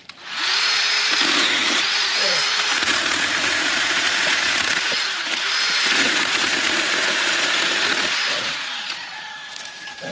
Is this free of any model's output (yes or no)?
no